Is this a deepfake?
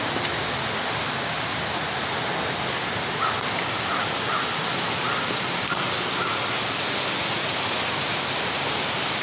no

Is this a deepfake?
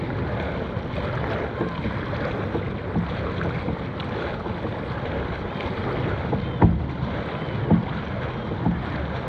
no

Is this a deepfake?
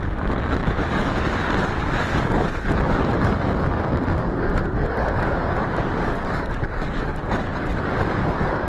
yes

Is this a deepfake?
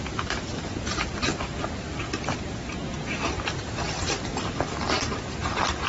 no